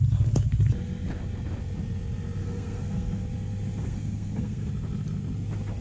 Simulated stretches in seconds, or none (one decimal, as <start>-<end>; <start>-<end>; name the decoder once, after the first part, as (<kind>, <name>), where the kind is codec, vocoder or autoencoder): 2.4-3.2 (codec, SNAC); 3.8-4.7